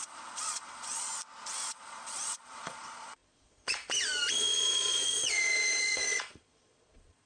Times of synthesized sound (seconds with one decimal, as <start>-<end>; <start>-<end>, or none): 0.0-1.1; 1.7-7.3